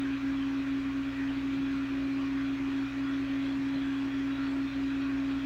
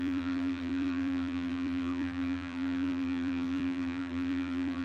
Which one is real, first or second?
first